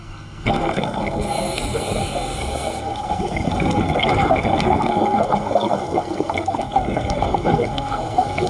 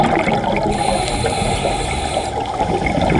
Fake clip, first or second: first